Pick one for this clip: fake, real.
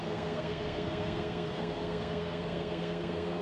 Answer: fake